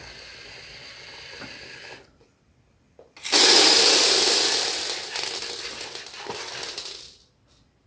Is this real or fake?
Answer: real